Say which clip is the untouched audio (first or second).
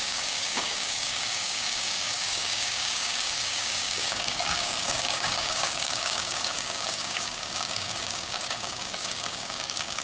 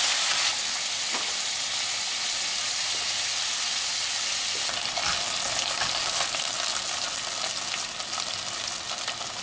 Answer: second